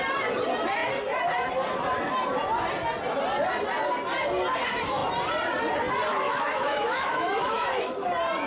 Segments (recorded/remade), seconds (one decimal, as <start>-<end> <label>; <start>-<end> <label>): 0.0-6.1 recorded; 6.1-7.9 remade; 7.9-8.5 recorded